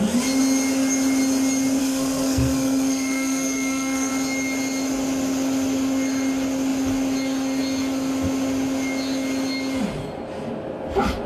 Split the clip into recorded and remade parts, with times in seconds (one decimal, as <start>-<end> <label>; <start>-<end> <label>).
0.0-1.8 recorded; 1.8-4.1 remade; 4.1-11.3 recorded